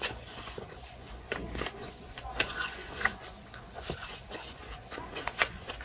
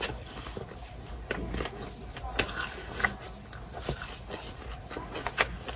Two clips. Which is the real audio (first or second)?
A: second